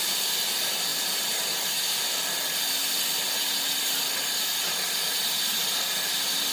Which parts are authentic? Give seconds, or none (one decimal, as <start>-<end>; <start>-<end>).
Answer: 0.9-1.7; 2.8-5.2